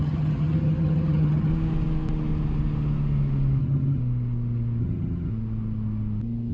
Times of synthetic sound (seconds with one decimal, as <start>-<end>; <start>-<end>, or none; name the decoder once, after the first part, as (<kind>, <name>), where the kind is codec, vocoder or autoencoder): 0.0-1.5 (vocoder, HiFi-GAN); 3.6-4.0; 4.8-5.3